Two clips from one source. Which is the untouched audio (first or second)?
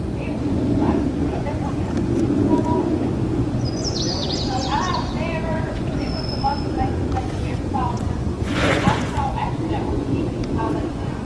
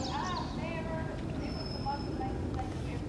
second